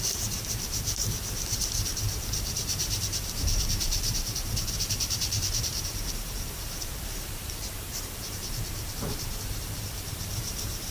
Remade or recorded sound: remade